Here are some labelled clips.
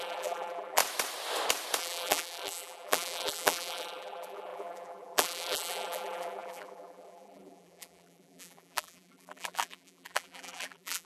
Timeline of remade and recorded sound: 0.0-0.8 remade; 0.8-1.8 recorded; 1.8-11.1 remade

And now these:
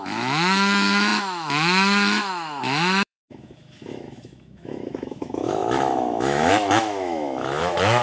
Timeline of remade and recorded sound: 0.0-8.0 remade

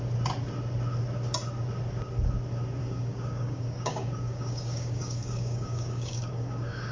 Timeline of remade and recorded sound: 0.0-2.8 recorded; 2.8-6.9 remade

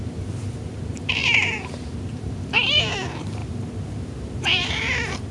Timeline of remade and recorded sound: 0.0-5.3 remade

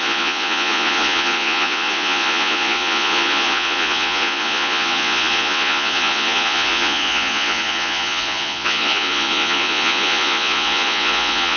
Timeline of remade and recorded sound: 0.0-11.6 remade

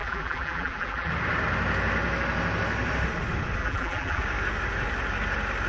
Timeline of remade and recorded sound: 0.0-1.1 remade; 1.1-3.6 recorded; 3.6-4.2 remade; 4.2-5.7 recorded